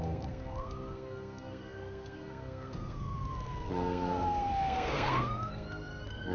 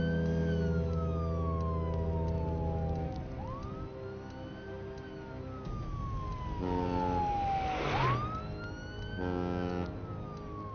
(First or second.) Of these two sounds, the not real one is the first